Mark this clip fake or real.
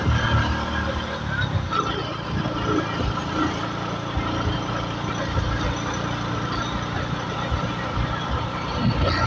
real